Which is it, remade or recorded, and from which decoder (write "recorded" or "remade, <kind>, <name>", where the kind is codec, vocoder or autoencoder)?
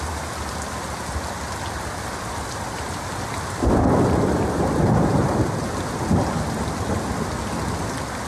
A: recorded